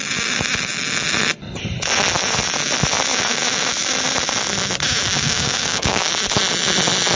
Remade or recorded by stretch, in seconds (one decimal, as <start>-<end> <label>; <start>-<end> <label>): 0.0-5.1 recorded; 5.1-6.1 remade; 6.1-7.2 recorded